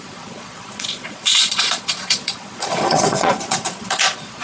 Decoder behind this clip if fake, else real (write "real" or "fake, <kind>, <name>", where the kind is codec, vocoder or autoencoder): fake, vocoder, Vocos